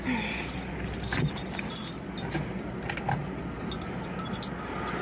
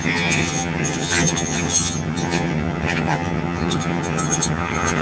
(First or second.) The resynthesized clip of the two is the second